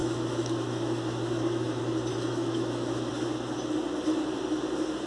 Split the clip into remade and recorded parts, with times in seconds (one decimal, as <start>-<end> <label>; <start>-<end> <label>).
0.0-3.1 remade; 3.1-5.1 recorded

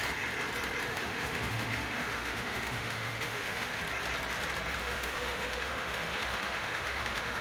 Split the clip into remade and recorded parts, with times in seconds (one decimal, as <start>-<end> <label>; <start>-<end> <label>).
0.0-0.9 recorded; 0.9-3.8 remade; 3.8-4.8 recorded; 4.8-7.4 remade

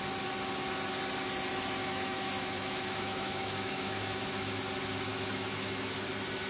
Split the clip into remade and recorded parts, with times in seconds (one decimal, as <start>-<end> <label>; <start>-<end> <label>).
0.0-1.8 recorded; 1.8-4.6 remade; 4.6-5.1 recorded; 5.1-6.1 remade; 6.1-6.5 recorded

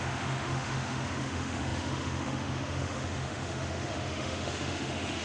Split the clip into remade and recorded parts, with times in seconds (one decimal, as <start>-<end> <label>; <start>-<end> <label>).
0.0-5.2 remade

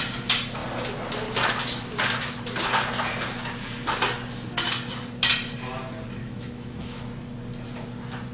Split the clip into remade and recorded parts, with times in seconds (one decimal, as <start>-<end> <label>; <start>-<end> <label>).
0.0-6.2 recorded; 6.2-7.0 remade; 7.0-8.3 recorded

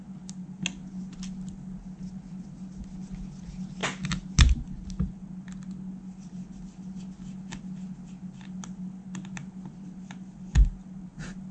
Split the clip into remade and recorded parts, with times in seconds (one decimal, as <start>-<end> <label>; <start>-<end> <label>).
0.0-11.5 recorded

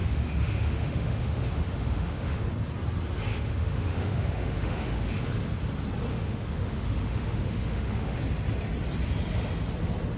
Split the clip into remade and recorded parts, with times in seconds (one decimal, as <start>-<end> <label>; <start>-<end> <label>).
0.0-2.4 remade; 2.4-3.3 recorded; 3.3-5.2 remade; 5.2-6.1 recorded; 6.1-8.2 remade; 8.2-10.2 recorded

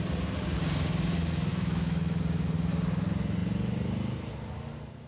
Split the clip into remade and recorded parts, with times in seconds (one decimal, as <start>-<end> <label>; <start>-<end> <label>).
0.0-1.5 recorded; 1.5-2.2 remade; 2.2-5.1 recorded